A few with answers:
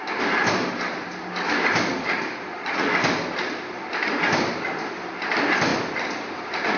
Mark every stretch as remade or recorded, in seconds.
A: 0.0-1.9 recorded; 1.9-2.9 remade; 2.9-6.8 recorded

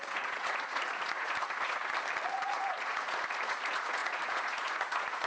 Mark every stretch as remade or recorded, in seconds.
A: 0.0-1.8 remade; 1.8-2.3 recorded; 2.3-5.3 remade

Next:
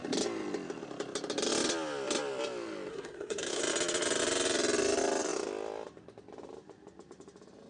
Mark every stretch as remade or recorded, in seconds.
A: 0.0-2.9 recorded; 2.9-3.6 remade; 3.6-7.7 recorded

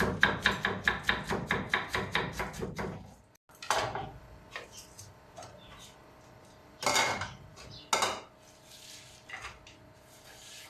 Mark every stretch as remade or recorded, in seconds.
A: 0.0-10.7 recorded